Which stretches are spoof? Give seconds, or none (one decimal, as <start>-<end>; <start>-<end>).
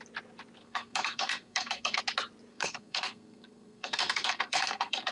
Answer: 0.6-2.0; 2.5-5.1